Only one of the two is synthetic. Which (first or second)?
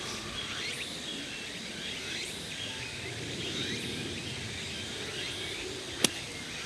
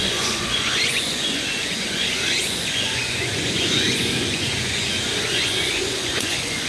second